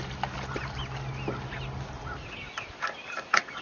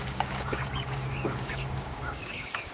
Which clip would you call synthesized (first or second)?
second